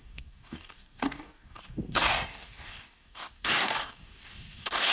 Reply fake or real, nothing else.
fake